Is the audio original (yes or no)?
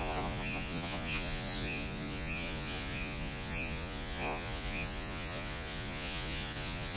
no